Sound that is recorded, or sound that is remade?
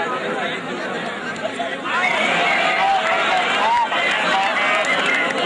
recorded